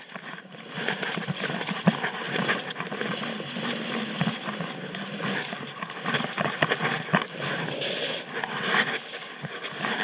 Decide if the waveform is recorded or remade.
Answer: recorded